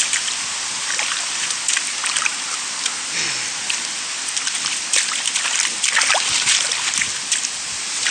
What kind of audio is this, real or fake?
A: real